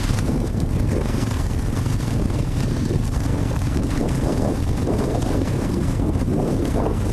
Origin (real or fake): fake